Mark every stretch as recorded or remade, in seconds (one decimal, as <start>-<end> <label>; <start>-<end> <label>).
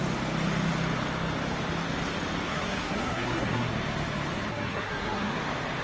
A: 0.0-2.5 recorded; 2.5-3.7 remade; 3.7-4.5 recorded; 4.5-5.3 remade; 5.3-5.8 recorded